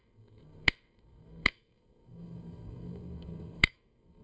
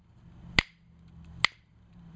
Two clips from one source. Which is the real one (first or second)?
second